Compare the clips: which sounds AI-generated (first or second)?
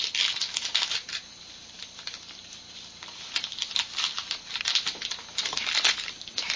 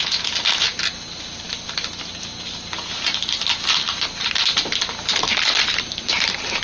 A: first